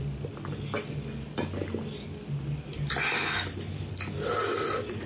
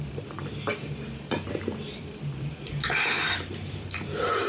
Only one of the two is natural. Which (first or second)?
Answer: first